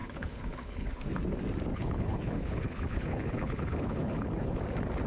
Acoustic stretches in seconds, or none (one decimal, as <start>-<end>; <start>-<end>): 0.9-1.7; 4.6-5.1